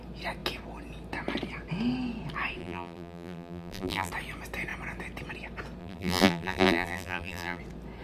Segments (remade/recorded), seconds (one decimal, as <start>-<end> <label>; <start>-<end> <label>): 0.0-2.6 recorded; 2.6-4.1 remade; 4.1-5.8 recorded; 5.8-7.6 remade; 7.6-8.0 recorded